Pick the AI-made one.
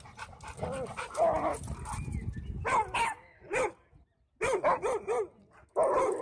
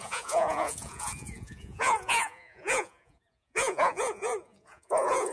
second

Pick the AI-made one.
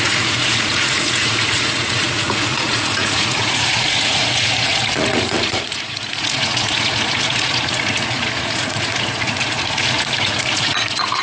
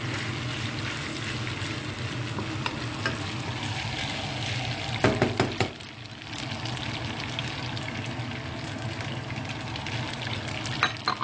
first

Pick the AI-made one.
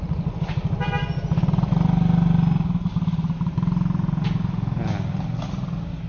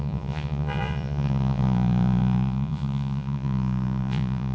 second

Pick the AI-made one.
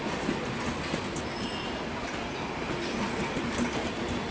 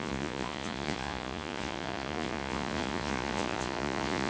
second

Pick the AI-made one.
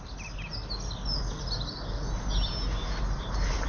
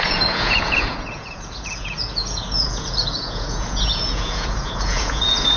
second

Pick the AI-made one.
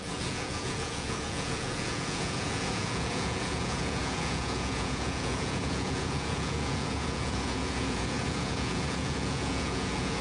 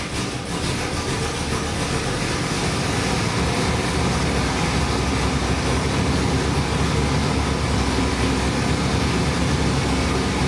first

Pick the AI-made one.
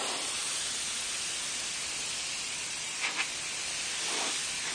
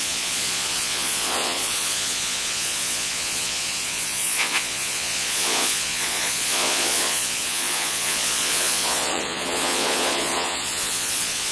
second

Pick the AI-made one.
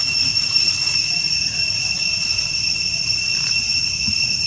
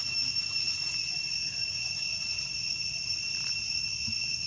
first